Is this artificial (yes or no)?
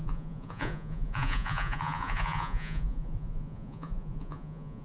yes